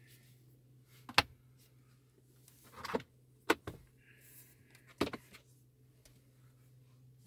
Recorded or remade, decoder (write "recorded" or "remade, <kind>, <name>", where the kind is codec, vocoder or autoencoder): recorded